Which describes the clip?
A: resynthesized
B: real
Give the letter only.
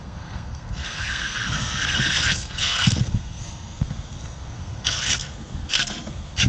A